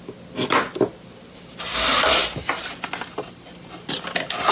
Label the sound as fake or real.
real